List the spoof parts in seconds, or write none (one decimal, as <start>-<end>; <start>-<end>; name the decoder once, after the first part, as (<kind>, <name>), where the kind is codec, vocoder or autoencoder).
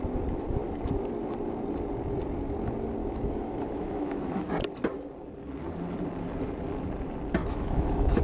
3.0-4.5 (autoencoder, DAC-VAE); 7.4-8.2